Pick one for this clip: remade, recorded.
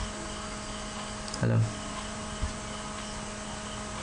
recorded